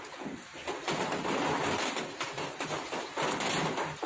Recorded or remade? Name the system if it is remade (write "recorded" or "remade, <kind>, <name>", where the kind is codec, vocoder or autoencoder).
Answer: recorded